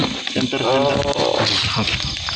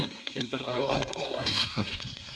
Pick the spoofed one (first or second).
second